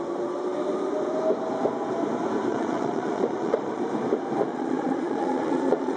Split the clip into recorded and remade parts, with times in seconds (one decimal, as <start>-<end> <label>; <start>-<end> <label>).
0.0-2.5 recorded; 2.5-3.8 remade; 3.8-4.5 recorded; 4.5-6.0 remade